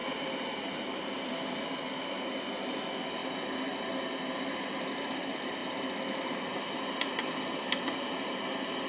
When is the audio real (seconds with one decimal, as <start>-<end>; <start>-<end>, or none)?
0.0-8.9